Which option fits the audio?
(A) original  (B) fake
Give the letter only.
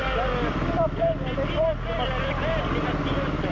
A